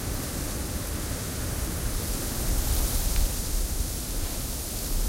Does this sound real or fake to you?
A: real